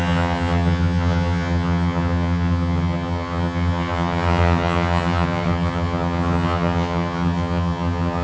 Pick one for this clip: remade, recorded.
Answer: remade